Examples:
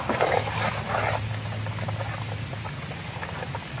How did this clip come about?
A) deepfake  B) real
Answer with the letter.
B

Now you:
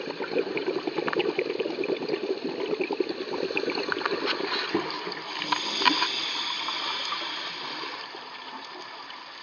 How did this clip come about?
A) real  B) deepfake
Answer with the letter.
A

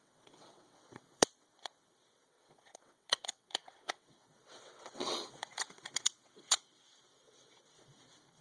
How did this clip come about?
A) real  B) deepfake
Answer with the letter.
B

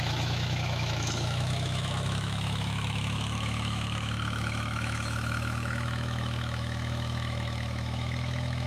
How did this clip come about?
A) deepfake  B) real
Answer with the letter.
A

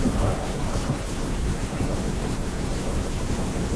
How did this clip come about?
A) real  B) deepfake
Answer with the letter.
B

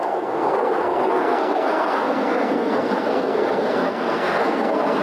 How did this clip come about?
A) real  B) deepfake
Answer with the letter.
B